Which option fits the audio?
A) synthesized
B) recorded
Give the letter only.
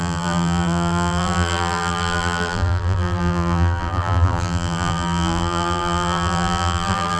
A